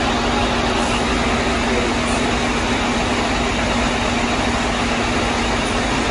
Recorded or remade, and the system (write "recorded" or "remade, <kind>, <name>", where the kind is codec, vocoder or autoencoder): recorded